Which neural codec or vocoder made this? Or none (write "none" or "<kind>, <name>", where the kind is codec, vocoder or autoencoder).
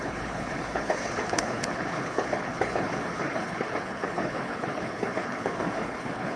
codec, HILCodec